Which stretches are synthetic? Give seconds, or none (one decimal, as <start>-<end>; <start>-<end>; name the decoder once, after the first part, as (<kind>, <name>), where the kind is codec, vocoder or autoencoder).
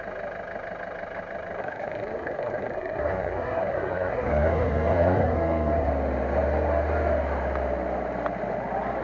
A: 1.6-5.9 (codec, SNAC)